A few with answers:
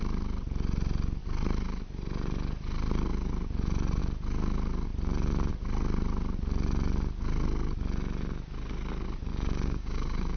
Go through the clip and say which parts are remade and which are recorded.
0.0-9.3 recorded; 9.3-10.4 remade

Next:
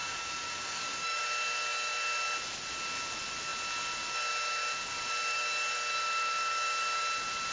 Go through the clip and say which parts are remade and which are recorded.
0.0-1.2 remade; 1.2-7.5 recorded

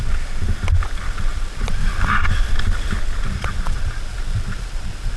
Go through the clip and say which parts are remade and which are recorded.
0.0-0.4 remade; 0.4-1.0 recorded; 1.0-1.8 remade; 1.8-3.0 recorded; 3.0-5.2 remade

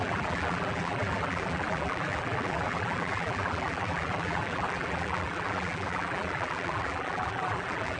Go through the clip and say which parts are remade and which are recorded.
0.0-8.0 remade

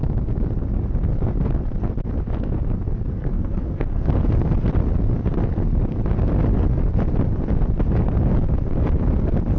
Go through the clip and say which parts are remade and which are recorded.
0.0-3.1 recorded; 3.1-4.1 remade; 4.1-9.6 recorded

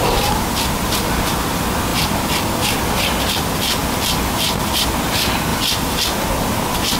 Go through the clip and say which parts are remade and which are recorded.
0.0-3.8 recorded; 3.8-4.9 remade; 4.9-5.5 recorded; 5.5-6.2 remade; 6.2-7.0 recorded

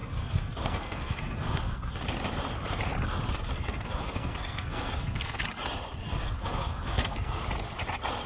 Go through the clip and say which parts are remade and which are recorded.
0.0-2.0 remade; 2.0-3.5 recorded; 3.5-5.4 remade; 5.4-6.0 recorded; 6.0-7.4 remade; 7.4-8.3 recorded